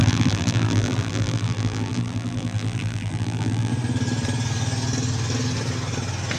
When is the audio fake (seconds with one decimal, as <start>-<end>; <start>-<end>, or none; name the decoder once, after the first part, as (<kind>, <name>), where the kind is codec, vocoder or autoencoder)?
0.0-3.7 (vocoder, BigVGAN v2)